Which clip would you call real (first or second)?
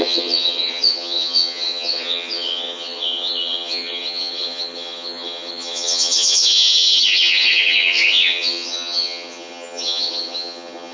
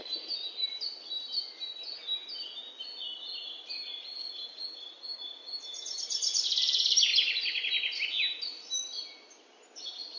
second